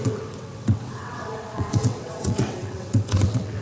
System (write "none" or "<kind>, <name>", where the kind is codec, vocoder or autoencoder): vocoder, WaveNeXt